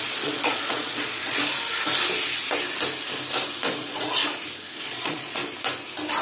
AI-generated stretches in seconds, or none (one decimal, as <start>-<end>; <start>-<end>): 0.0-1.4; 3.8-4.2; 4.8-5.4